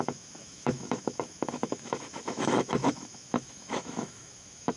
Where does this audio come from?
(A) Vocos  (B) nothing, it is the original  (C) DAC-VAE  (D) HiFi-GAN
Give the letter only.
C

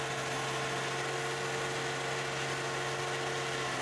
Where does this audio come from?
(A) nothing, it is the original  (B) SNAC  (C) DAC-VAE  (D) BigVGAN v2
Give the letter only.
A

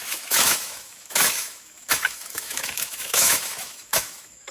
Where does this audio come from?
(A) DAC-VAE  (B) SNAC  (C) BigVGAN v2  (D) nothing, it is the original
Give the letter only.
A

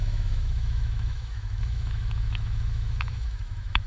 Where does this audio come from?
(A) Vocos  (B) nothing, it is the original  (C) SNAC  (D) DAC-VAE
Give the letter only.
D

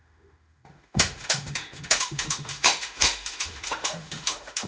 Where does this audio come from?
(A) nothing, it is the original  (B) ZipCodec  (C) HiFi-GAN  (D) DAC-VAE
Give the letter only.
D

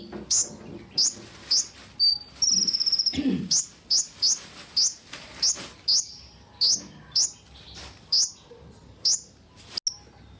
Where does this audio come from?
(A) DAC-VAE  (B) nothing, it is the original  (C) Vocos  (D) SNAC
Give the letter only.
B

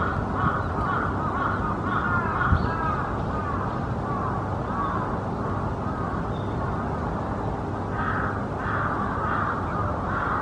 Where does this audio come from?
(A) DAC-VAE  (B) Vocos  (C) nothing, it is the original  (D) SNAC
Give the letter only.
C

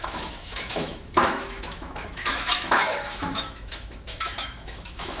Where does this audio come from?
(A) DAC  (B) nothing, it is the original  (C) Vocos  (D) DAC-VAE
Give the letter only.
D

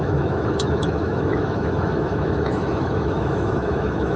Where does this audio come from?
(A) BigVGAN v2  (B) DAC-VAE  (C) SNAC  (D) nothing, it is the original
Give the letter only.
B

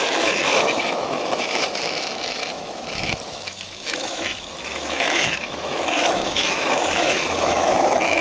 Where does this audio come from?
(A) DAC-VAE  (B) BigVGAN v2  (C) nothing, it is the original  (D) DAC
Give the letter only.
A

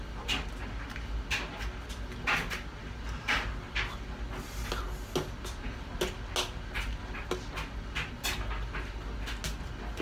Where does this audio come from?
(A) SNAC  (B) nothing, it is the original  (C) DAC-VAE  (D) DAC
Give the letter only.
B